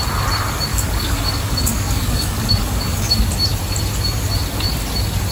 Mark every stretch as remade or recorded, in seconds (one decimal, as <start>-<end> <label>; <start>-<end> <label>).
0.0-0.7 recorded; 0.7-3.1 remade; 3.1-5.3 recorded